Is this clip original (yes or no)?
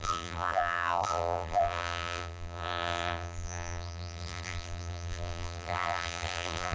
no